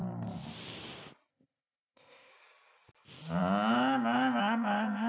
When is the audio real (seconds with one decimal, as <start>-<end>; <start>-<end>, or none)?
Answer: 0.0-1.3; 2.3-4.4